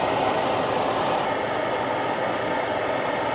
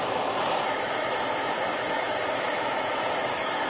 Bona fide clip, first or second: first